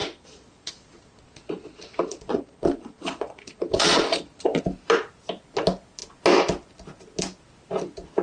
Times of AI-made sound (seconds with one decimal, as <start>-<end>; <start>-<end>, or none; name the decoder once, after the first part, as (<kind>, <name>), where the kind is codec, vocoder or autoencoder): 0.0-4.6 (vocoder, Vocos)